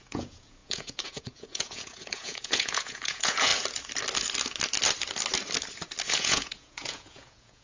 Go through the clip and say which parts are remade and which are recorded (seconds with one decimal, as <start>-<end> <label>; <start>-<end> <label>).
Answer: 0.0-3.5 remade; 3.5-6.1 recorded; 6.1-7.6 remade